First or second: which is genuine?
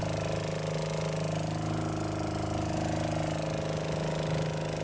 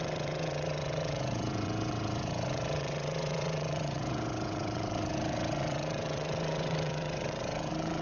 first